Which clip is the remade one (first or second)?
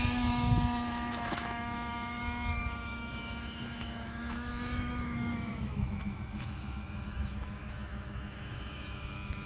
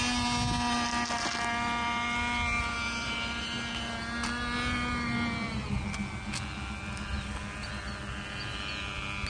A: first